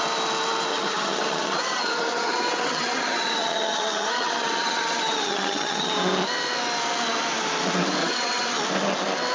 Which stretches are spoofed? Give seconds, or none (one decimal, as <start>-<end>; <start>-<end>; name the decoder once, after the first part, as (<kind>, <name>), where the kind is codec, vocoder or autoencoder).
0.7-5.9 (vocoder, HiFi-GAN); 8.0-8.6